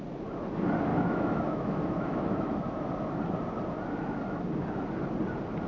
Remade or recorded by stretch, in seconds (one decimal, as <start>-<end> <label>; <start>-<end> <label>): 0.0-0.9 recorded; 0.9-2.9 remade; 2.9-5.7 recorded